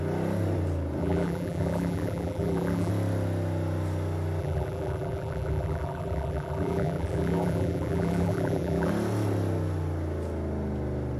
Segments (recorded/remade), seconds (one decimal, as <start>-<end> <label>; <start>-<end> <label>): 0.0-1.0 recorded; 1.0-2.9 remade; 2.9-4.4 recorded; 4.4-8.9 remade; 8.9-11.2 recorded